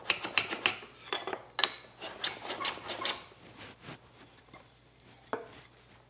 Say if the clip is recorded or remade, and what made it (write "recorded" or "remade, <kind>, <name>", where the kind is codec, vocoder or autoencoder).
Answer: recorded